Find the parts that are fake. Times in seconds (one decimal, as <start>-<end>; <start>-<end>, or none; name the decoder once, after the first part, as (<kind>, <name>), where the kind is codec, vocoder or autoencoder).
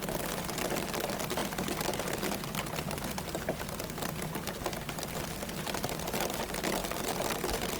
none